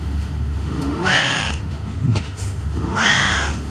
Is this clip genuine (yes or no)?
no